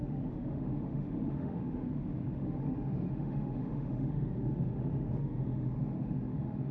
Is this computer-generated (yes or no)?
yes